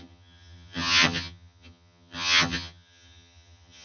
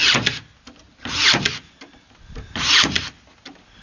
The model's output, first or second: first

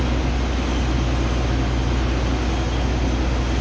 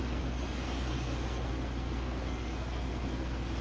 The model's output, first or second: second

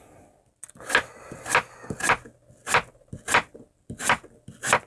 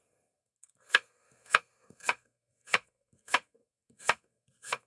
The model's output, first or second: second